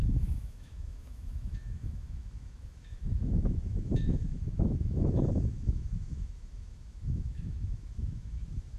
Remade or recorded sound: remade